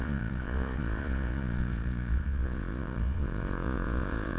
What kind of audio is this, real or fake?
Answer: fake